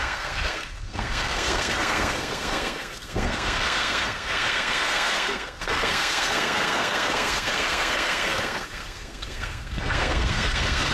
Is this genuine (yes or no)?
no